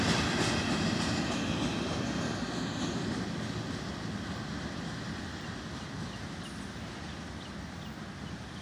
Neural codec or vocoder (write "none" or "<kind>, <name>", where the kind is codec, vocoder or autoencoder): none